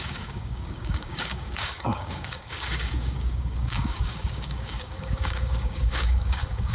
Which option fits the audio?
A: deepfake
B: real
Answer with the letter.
A